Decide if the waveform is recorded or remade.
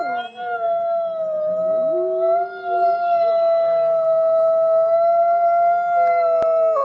recorded